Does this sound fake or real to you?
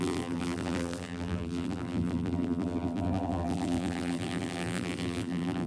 fake